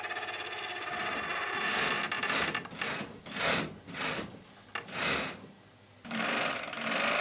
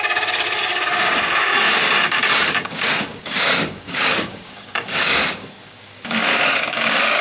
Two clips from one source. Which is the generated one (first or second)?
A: second